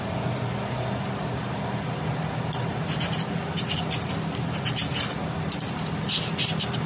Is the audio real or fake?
real